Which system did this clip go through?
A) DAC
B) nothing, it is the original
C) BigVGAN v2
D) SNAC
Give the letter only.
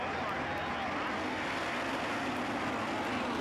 B